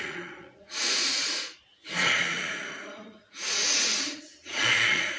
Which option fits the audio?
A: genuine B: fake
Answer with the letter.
B